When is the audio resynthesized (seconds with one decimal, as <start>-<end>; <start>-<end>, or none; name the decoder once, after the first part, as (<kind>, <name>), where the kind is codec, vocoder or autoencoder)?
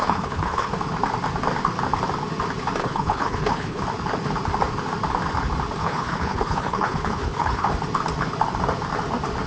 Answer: 0.0-0.7 (codec, HILCodec); 2.8-3.8; 5.8-7.7